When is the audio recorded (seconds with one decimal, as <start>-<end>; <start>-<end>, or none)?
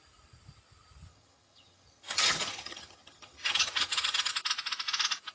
0.0-1.1; 4.3-5.3